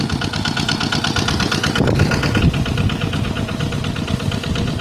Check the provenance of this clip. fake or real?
real